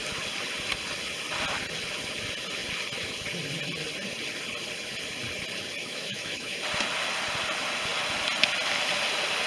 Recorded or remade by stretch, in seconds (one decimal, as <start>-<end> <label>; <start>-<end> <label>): 0.0-5.8 recorded; 5.8-6.6 remade; 6.6-9.5 recorded